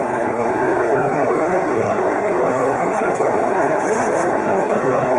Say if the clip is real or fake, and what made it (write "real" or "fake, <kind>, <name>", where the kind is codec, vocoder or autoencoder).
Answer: fake, codec, SNAC